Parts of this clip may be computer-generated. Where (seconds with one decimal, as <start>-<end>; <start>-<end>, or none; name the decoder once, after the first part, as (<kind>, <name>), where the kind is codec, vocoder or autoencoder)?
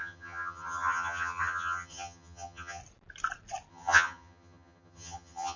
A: 0.0-2.8 (vocoder, HiFi-GAN); 3.7-5.6